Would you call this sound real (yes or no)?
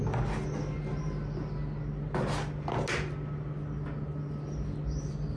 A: yes